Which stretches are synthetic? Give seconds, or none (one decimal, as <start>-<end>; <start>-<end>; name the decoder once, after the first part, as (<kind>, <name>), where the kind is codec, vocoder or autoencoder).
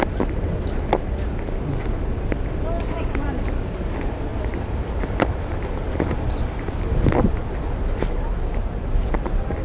none